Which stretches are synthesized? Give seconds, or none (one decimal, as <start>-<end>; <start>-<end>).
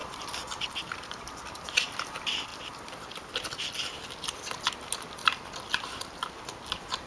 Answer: 0.0-1.9; 2.5-3.3; 5.2-6.0